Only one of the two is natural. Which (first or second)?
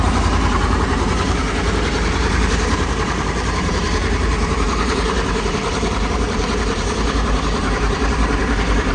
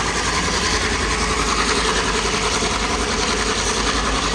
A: second